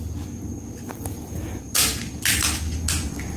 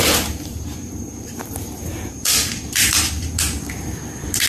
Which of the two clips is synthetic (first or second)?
second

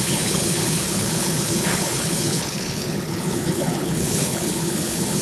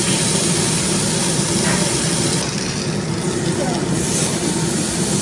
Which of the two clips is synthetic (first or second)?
first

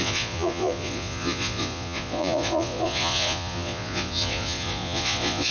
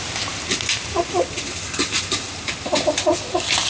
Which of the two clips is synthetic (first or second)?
first